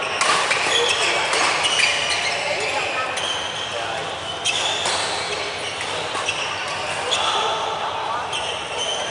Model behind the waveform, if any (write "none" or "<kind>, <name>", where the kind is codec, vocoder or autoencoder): none